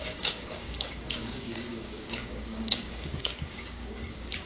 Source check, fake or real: fake